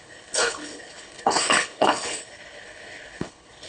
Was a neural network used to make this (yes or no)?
yes